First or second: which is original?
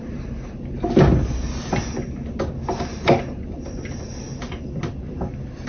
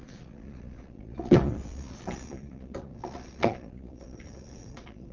first